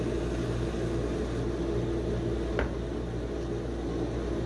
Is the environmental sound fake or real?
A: real